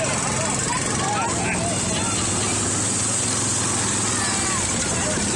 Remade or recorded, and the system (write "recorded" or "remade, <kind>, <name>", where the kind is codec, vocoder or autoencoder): recorded